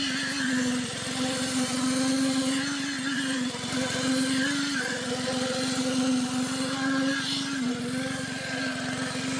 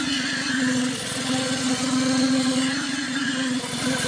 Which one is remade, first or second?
second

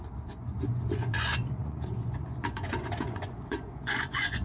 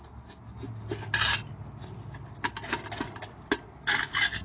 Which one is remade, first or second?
first